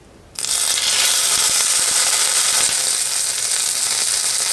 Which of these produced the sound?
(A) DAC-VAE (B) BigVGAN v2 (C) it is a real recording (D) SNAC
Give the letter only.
C